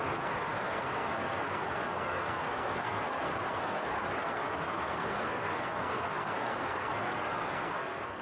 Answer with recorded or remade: remade